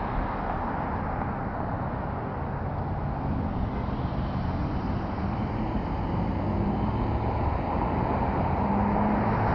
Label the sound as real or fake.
real